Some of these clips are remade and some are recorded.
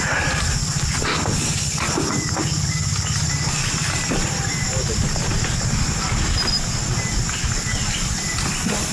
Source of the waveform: recorded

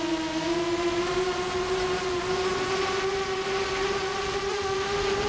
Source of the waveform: recorded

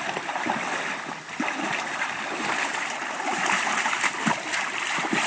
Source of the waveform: remade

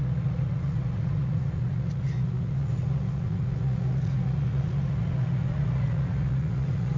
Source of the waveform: remade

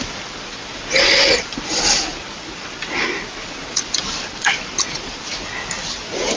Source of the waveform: remade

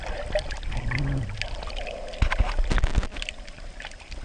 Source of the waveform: recorded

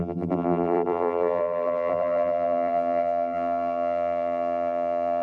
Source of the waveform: remade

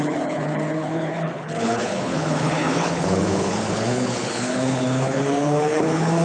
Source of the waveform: remade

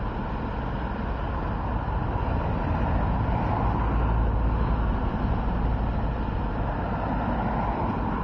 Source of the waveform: recorded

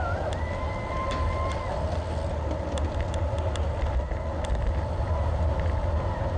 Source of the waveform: recorded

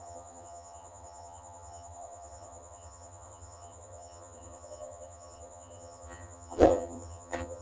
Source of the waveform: remade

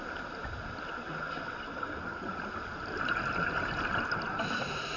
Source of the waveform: recorded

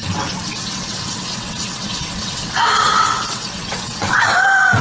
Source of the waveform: remade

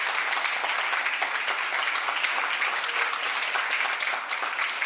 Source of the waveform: recorded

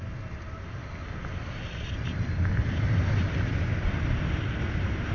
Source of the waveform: recorded